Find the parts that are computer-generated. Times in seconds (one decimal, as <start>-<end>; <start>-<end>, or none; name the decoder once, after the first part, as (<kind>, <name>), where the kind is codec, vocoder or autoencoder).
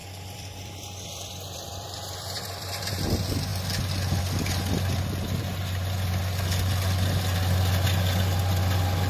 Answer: 0.0-2.9 (vocoder, BigVGAN v2); 5.6-6.2